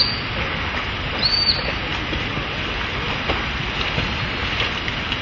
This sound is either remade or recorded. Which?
recorded